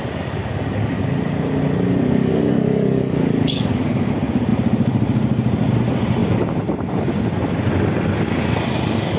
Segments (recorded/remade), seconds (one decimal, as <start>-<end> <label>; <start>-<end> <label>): 0.0-0.4 recorded; 0.4-1.0 remade; 1.0-2.2 recorded; 2.2-4.1 remade; 4.1-9.2 recorded